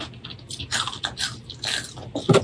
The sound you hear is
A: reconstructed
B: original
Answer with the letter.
B